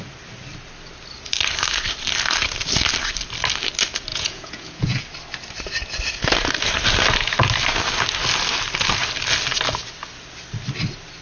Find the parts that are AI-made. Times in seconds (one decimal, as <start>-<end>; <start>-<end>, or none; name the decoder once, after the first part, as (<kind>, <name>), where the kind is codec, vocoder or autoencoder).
4.1-5.0 (vocoder, Vocos)